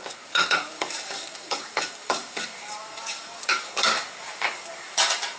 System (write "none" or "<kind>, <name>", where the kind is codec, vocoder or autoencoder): codec, DAC